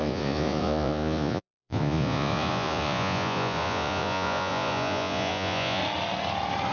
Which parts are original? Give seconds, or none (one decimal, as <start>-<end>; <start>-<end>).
5.8-6.7